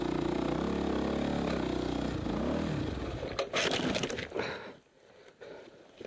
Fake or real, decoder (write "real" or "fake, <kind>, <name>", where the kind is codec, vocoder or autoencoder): real